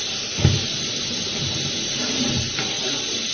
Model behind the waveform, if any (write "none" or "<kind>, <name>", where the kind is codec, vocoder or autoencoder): vocoder, BigVGAN v2